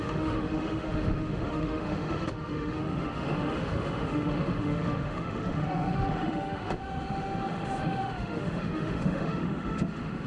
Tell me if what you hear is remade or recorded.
remade